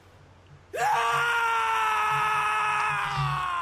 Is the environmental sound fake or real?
real